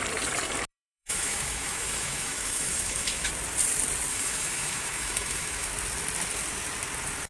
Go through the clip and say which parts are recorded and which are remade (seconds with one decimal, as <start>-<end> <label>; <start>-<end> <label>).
0.0-0.7 recorded; 0.7-3.3 remade; 3.3-4.1 recorded; 4.1-5.7 remade; 5.7-7.3 recorded